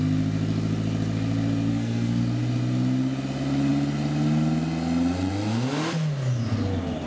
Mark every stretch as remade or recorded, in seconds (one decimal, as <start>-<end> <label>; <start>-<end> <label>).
0.0-1.7 recorded; 1.7-2.2 remade; 2.2-7.1 recorded